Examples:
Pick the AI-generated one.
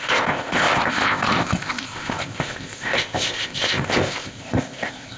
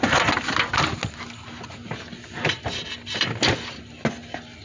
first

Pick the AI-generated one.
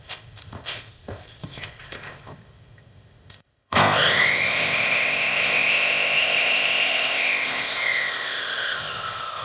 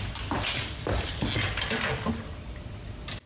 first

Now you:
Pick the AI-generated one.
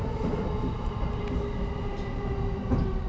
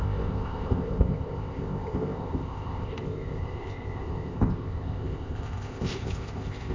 second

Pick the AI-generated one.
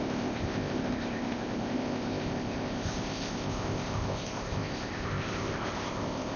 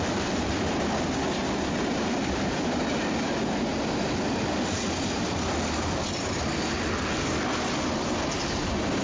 first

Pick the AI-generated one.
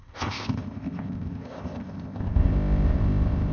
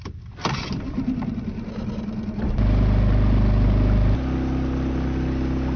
first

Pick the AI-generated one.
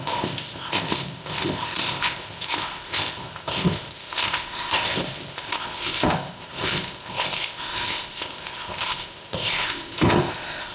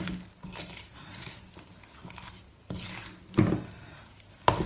first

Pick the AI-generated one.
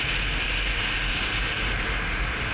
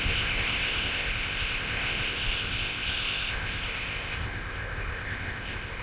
second